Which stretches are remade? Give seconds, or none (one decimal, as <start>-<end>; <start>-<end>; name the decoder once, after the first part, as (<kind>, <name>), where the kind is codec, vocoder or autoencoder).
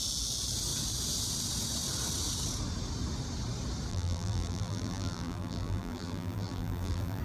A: 3.9-7.2 (vocoder, BigVGAN v2)